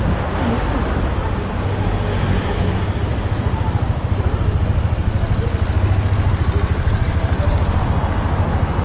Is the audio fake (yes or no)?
no